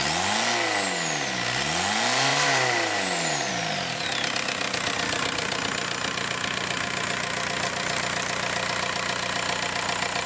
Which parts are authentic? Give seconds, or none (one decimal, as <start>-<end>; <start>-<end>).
0.0-2.3; 3.5-10.3